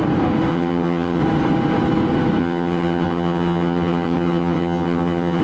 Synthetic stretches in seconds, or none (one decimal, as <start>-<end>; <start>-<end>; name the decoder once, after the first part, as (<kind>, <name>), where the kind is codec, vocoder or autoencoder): 0.5-1.2 (vocoder, HiFi-GAN); 2.4-5.4